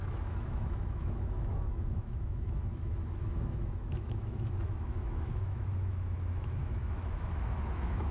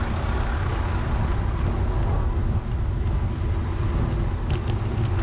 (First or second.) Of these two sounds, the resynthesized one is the first